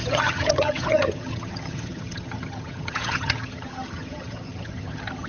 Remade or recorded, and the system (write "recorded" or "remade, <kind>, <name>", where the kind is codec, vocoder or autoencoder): remade, vocoder, HiFi-GAN